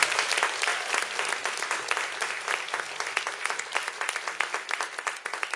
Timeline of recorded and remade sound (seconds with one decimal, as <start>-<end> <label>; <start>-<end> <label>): 0.0-5.6 recorded